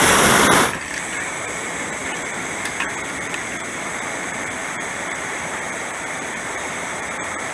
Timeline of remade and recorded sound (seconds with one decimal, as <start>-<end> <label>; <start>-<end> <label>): 0.0-7.5 remade